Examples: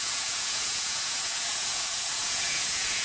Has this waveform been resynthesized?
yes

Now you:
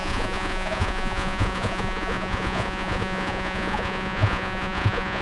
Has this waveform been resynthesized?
yes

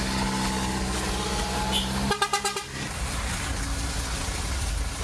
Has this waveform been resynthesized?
no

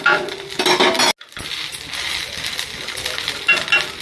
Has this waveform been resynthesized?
no